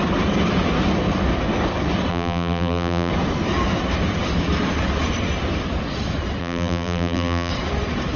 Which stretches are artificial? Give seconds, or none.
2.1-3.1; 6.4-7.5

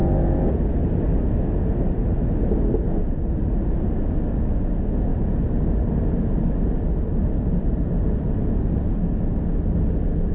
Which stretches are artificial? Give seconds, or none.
0.0-1.0; 5.1-9.1